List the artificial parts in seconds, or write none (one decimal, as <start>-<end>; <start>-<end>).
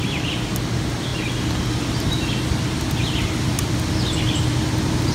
none